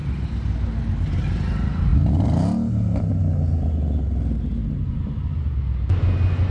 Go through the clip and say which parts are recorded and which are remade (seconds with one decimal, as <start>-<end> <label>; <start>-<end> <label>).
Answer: 0.0-6.5 recorded